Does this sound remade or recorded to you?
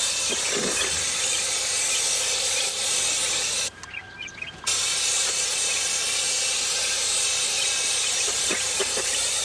recorded